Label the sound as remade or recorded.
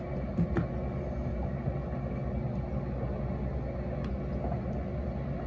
recorded